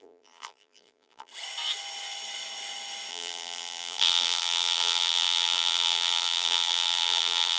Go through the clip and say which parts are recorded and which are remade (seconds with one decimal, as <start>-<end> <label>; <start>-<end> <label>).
0.0-1.3 remade; 1.3-3.1 recorded; 3.1-7.6 remade